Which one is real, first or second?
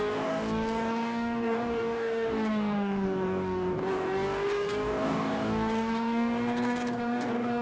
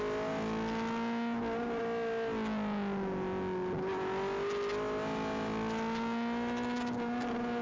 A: second